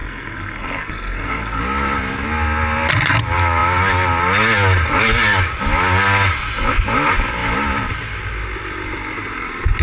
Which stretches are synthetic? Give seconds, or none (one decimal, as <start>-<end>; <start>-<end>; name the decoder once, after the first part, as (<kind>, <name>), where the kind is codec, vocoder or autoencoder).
0.0-1.6 (codec, SNAC)